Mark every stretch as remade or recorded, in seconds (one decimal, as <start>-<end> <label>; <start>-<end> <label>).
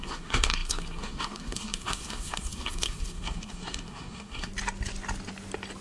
0.0-4.5 remade; 4.5-5.8 recorded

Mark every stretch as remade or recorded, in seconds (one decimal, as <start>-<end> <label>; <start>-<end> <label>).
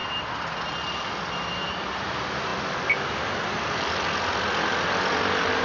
0.0-5.6 recorded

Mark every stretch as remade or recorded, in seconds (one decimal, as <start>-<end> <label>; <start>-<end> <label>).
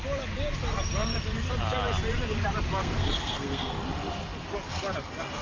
0.0-2.8 recorded; 2.8-3.7 remade; 3.7-5.4 recorded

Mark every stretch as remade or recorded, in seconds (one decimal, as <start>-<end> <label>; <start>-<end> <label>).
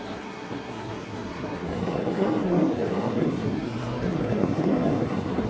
0.0-5.5 remade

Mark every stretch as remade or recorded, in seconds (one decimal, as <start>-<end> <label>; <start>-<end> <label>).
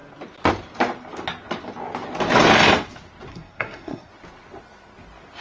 0.0-3.3 recorded; 3.3-4.1 remade; 4.1-5.4 recorded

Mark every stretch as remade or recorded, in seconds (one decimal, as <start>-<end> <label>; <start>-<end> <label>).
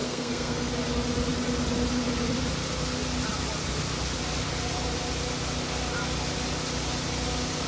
0.0-0.7 remade; 0.7-7.7 recorded